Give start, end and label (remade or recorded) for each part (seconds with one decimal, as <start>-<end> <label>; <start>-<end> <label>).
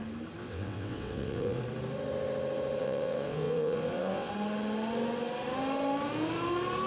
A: 0.0-0.4 recorded; 0.4-1.6 remade; 1.6-2.8 recorded; 2.8-4.3 remade; 4.3-6.9 recorded